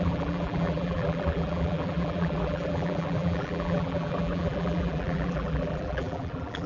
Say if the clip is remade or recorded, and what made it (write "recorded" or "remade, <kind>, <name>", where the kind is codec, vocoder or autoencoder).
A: remade, vocoder, BigVGAN v2